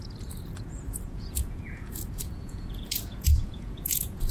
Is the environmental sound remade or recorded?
remade